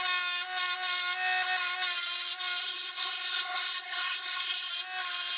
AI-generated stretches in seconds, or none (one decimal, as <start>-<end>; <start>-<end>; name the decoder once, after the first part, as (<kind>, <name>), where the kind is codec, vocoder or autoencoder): 2.6-4.7 (codec, SNAC)